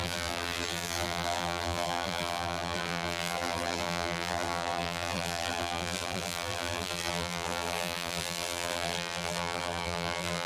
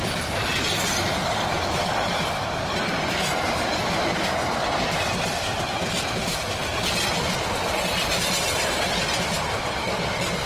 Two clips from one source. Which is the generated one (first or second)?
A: first